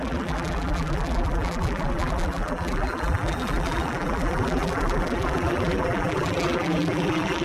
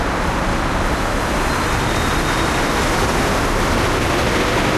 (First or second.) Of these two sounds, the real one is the second